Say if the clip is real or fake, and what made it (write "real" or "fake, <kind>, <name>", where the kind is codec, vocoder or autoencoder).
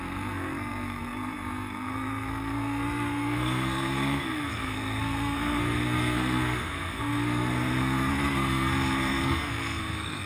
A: fake, codec, SNAC